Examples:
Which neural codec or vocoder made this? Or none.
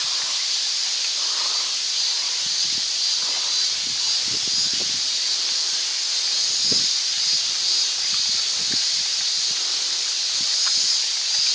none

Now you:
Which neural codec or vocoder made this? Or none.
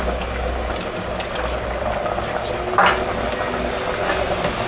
none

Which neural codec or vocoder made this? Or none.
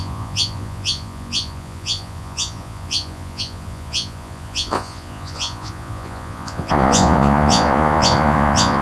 vocoder, Vocos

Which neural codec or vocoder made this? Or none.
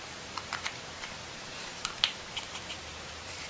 vocoder, BigVGAN v2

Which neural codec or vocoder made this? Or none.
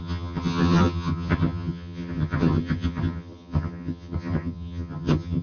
vocoder, HiFi-GAN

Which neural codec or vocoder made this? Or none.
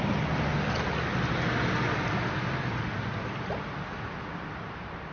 none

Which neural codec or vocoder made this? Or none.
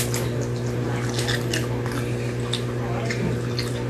none